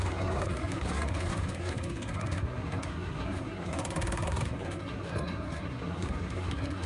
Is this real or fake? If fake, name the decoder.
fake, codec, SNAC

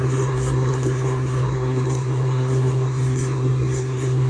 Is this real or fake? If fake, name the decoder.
fake, codec, SNAC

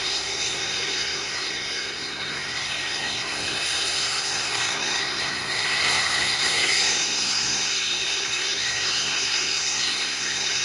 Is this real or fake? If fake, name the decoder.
fake, codec, SNAC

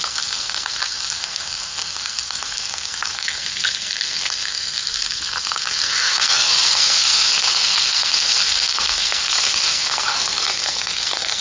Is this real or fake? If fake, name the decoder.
fake, codec, SNAC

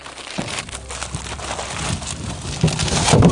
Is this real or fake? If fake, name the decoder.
real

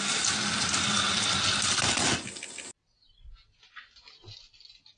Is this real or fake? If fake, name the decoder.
real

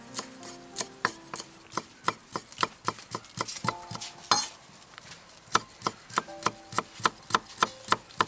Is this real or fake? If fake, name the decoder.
real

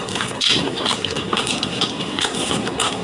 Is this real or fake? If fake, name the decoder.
fake, codec, SNAC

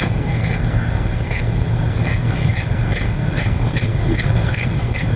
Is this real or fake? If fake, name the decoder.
fake, codec, SNAC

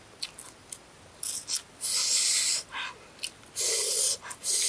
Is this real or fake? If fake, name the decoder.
real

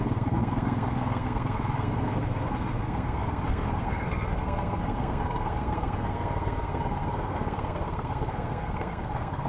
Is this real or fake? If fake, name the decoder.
fake, codec, SNAC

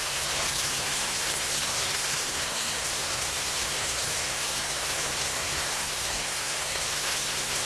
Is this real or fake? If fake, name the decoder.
fake, codec, SNAC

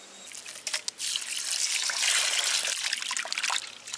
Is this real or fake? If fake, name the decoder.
real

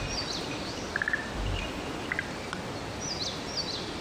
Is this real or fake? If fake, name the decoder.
real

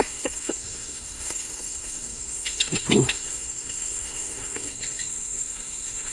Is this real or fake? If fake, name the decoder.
fake, codec, SNAC